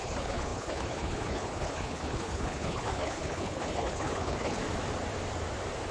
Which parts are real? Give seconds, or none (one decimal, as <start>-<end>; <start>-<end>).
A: 4.6-5.9

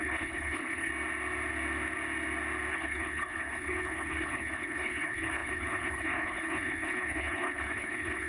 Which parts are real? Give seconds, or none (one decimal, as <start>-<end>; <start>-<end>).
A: 0.9-2.7

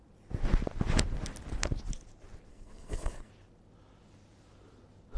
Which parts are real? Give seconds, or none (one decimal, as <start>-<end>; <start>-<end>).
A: 0.0-2.5; 3.3-5.2

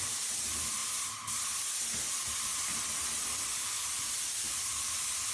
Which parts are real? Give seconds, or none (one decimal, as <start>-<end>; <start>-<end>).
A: 0.8-4.0

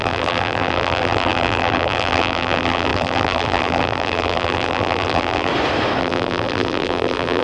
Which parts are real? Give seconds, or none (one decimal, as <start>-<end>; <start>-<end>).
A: 5.5-6.0

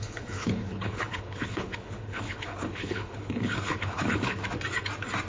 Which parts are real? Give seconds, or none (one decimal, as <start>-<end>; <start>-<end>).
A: 4.4-5.3

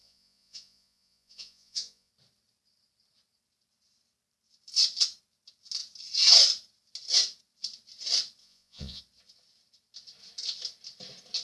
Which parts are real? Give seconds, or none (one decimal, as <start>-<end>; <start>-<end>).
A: 2.1-8.4; 9.0-11.4

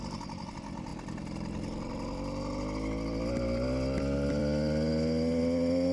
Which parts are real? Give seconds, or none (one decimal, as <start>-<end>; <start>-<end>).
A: 0.0-5.9